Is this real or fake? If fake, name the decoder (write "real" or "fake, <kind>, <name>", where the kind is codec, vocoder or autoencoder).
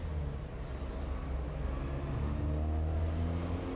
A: real